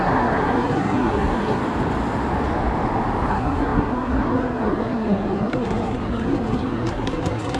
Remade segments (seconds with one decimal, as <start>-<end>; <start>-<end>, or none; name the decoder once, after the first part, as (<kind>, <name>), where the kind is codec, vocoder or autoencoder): 0.0-1.6 (codec, SNAC); 3.3-7.6